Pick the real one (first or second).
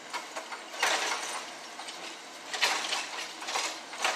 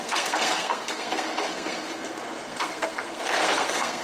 first